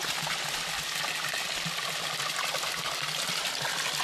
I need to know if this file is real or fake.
real